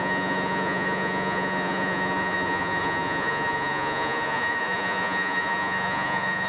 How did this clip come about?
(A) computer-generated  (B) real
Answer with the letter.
A